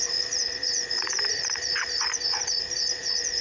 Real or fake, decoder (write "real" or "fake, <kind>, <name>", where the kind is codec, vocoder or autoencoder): fake, vocoder, Vocos